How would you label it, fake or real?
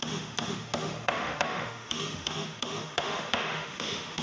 fake